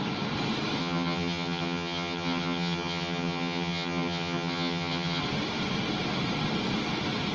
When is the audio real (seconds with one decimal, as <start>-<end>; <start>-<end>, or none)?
0.0-0.8; 5.2-7.3